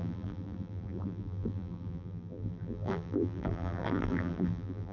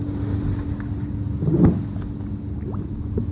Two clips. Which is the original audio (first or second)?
second